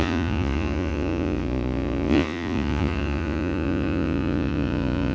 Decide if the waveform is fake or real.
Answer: fake